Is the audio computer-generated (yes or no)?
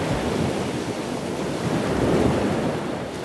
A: no